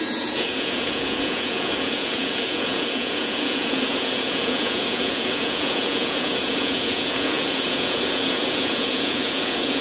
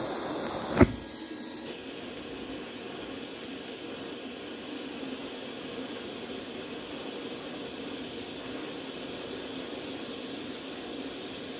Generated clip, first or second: first